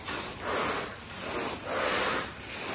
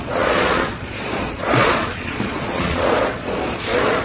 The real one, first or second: first